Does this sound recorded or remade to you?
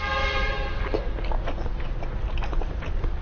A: recorded